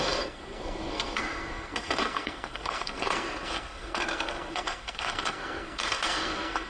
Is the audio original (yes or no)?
no